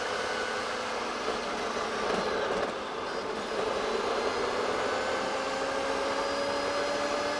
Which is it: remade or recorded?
recorded